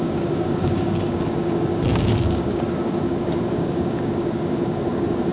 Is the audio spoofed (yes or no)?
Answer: yes